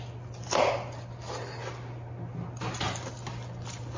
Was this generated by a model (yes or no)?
no